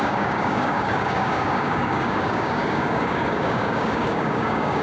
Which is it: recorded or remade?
remade